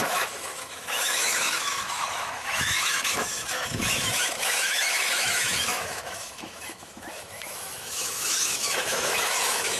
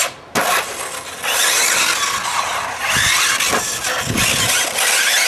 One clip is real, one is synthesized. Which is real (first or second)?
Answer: second